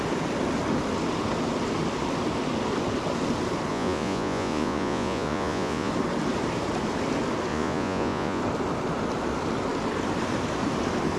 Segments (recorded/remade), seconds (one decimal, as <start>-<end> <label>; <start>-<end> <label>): 0.0-3.7 recorded; 3.7-5.9 remade; 5.9-7.5 recorded; 7.5-8.4 remade; 8.4-11.2 recorded